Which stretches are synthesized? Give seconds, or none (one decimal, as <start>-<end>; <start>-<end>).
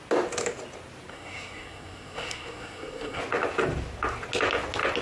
1.1-3.2